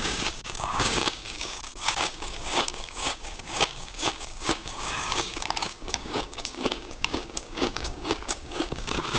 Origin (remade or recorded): remade